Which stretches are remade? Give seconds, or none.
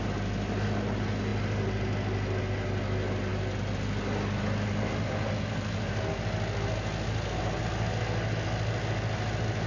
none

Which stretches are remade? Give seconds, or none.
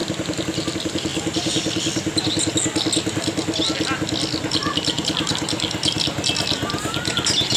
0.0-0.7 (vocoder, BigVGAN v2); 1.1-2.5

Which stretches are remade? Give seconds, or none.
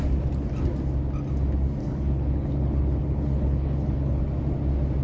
1.8-4.2 (codec, HILCodec)